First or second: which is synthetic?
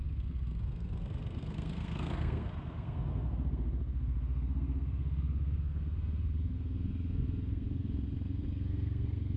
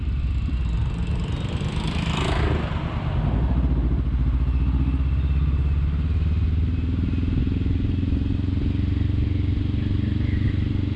first